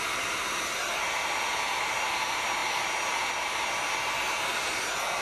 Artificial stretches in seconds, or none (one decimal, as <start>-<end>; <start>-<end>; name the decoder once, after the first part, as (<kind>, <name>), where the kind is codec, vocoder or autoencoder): none